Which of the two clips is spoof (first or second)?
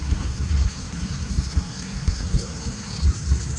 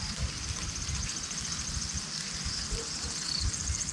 first